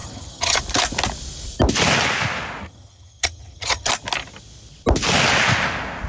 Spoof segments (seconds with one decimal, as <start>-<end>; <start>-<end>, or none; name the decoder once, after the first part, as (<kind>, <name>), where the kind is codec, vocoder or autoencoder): 0.0-0.6 (vocoder, HiFi-GAN); 2.6-3.9